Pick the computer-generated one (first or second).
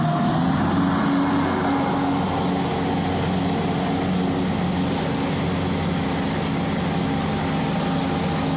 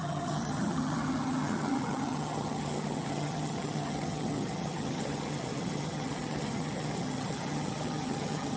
second